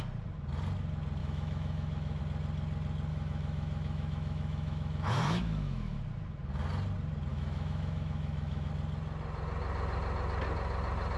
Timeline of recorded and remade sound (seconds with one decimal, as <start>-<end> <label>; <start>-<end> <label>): 0.0-1.2 recorded; 1.2-2.2 remade; 2.2-3.1 recorded; 3.1-6.0 remade; 6.0-7.3 recorded; 7.3-8.7 remade; 8.7-11.2 recorded